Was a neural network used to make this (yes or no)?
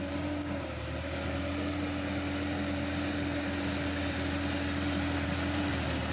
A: no